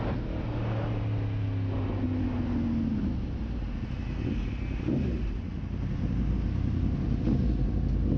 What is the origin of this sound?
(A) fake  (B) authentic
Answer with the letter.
B